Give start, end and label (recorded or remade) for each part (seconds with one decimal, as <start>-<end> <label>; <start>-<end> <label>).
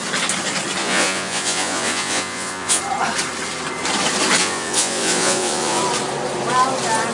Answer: 0.0-0.8 recorded; 0.8-2.8 remade; 2.8-4.4 recorded; 4.4-5.8 remade; 5.8-7.1 recorded